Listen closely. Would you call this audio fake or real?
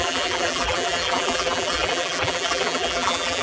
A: fake